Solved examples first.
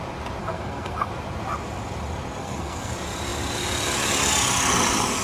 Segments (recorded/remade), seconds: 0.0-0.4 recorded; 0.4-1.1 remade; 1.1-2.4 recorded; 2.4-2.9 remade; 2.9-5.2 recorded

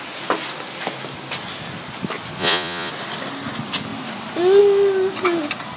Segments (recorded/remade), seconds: 0.0-2.4 recorded; 2.4-2.9 remade; 2.9-5.8 recorded